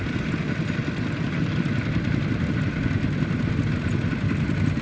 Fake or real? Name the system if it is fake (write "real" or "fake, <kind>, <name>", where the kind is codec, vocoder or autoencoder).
real